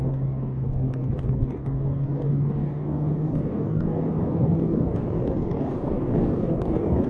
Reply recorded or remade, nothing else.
remade